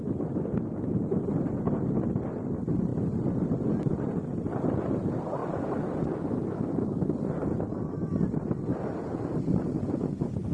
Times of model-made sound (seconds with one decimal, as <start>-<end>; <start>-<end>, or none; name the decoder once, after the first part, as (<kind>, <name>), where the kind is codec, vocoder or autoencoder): 5.4-7.0 (vocoder, BigVGAN v2); 7.4-8.4